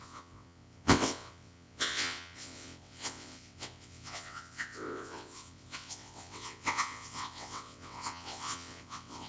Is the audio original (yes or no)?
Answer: no